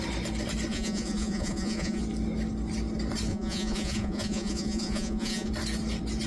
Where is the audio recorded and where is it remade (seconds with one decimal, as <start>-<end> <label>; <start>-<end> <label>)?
0.0-0.7 recorded; 0.7-2.0 remade; 2.0-3.3 recorded; 3.3-5.5 remade; 5.5-6.3 recorded